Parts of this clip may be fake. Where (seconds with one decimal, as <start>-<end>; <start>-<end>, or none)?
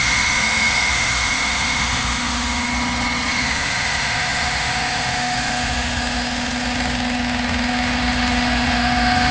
0.0-2.7; 3.3-9.3